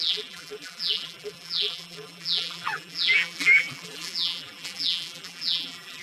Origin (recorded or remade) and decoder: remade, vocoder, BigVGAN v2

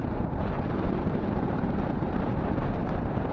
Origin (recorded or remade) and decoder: remade, vocoder, BigVGAN v2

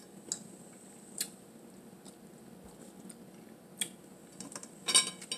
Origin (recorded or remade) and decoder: recorded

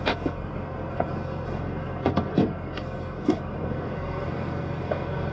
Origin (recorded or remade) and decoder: remade, codec, SNAC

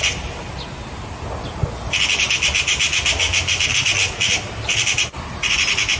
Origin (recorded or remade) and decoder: recorded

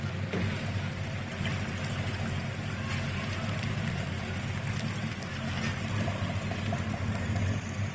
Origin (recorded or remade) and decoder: recorded